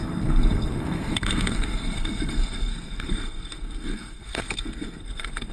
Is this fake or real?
fake